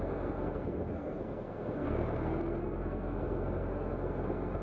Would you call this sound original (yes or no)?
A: no